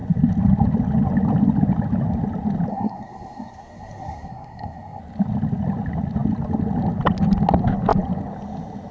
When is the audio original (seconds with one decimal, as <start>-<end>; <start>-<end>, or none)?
0.0-2.7; 5.0-8.9